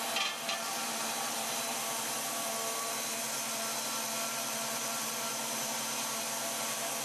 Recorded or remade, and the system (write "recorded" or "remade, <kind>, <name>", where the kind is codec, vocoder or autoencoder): recorded